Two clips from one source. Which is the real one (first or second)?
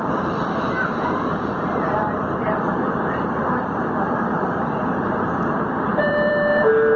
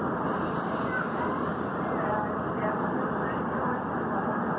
second